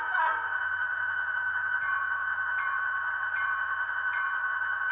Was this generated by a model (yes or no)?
yes